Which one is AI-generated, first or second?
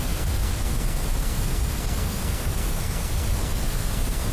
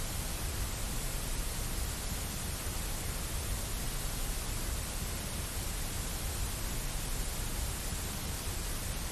first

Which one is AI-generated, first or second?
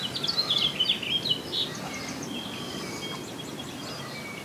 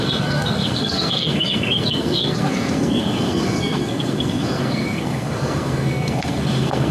second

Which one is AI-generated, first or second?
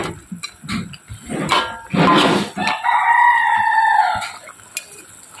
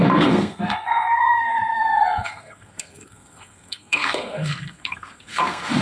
second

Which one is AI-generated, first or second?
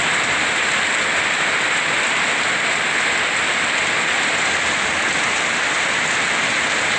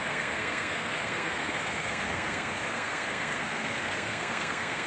second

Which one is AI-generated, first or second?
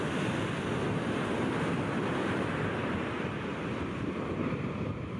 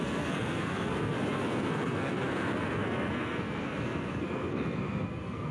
second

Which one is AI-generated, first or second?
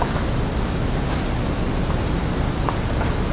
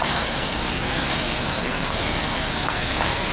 second